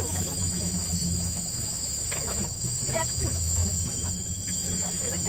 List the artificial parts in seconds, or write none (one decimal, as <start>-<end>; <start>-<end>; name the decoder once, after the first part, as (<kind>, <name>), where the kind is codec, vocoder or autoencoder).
0.0-5.3 (autoencoder, DAC-VAE)